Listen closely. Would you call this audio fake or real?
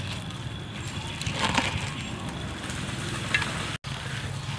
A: real